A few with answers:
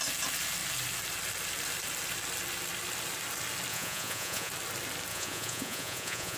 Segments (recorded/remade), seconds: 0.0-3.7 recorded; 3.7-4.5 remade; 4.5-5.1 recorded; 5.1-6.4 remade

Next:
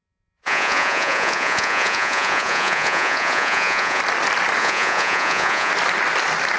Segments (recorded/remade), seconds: 0.0-4.0 remade; 4.0-4.6 recorded; 4.6-5.7 remade; 5.7-6.6 recorded

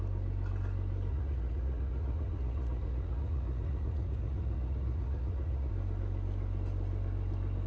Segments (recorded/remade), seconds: 0.0-1.1 recorded; 1.1-5.7 remade; 5.7-7.7 recorded